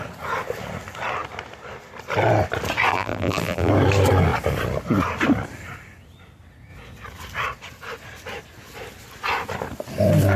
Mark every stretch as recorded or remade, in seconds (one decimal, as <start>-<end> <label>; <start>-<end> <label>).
0.0-2.9 recorded; 2.9-3.7 remade; 3.7-10.4 recorded